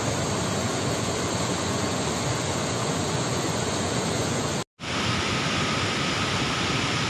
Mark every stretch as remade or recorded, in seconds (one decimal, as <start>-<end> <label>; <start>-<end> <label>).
0.0-0.6 recorded; 0.6-4.5 remade; 4.5-7.1 recorded